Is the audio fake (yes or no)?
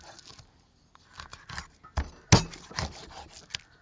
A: no